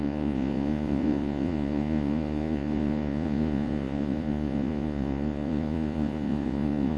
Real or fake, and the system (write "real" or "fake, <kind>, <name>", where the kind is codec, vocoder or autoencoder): fake, vocoder, Vocos